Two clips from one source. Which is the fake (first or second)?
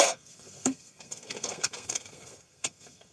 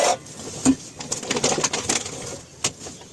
first